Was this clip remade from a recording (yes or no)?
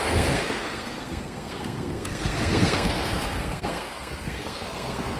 yes